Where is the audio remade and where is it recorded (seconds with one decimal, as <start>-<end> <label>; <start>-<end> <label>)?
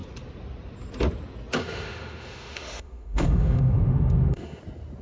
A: 0.0-1.6 recorded; 1.6-4.6 remade; 4.6-5.0 recorded